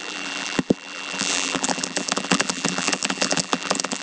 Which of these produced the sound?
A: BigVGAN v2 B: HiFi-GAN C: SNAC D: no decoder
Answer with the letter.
A